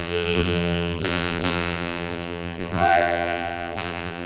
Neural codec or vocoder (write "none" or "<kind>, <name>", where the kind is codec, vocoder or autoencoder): vocoder, BigVGAN v2